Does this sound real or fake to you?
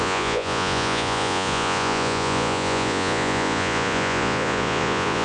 fake